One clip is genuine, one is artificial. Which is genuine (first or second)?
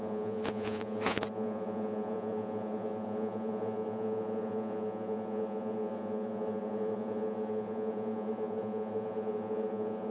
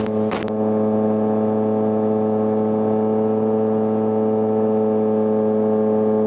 second